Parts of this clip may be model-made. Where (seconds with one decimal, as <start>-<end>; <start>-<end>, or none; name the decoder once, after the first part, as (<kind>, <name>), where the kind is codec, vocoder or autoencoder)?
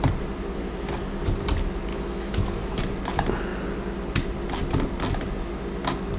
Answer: 1.9-2.8 (autoencoder, DAC-VAE)